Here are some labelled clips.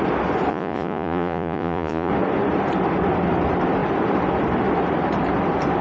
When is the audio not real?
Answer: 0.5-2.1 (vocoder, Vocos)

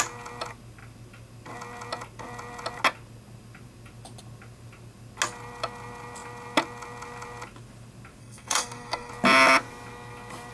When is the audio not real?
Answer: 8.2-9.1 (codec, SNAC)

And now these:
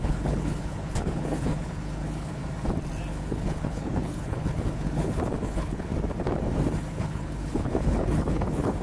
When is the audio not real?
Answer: 0.0-2.4 (codec, HILCodec); 3.1-5.9; 6.9-8.8

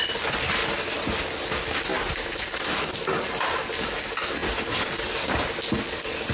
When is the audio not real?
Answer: 1.9-3.9 (vocoder, BigVGAN v2); 4.4-4.9

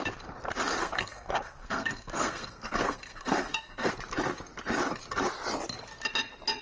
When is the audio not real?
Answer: 0.8-3.9 (codec, SNAC)